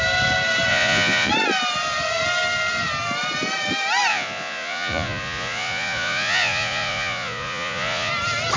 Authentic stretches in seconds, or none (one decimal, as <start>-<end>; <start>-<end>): 0.0-0.7; 1.3-4.1; 8.1-8.6